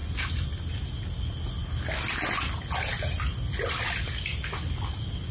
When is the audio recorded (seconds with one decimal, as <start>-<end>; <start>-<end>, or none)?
0.0-5.3